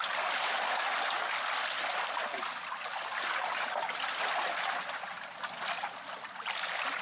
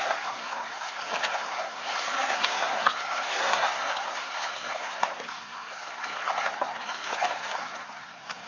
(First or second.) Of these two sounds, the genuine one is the first